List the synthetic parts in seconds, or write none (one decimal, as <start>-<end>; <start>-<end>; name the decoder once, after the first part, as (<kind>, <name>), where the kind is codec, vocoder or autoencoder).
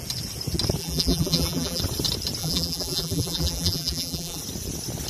0.8-1.8 (vocoder, BigVGAN v2); 2.4-4.4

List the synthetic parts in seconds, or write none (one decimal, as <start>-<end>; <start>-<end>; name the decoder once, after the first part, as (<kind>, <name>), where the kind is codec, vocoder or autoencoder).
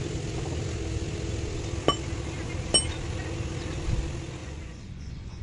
4.4-5.4 (vocoder, Vocos)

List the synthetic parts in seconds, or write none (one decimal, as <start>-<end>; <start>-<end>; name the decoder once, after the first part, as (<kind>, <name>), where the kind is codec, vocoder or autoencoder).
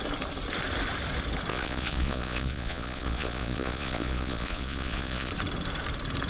1.5-5.3 (vocoder, Vocos)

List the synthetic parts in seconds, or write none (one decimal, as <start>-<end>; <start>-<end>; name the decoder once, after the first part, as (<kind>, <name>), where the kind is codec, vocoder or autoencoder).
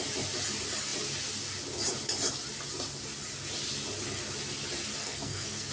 5.0-5.7 (codec, SNAC)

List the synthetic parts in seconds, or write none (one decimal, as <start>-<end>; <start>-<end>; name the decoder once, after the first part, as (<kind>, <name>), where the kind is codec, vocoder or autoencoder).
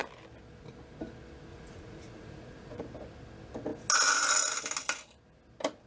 1.5-2.8 (vocoder, Vocos)